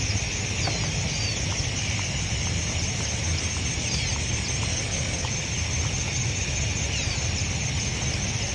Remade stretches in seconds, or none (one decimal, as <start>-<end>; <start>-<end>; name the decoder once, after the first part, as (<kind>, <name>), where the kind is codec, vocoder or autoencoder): 4.7-5.3 (codec, DAC)